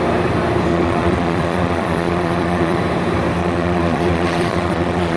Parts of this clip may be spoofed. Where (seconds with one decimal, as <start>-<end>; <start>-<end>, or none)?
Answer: 0.7-2.8; 3.4-5.2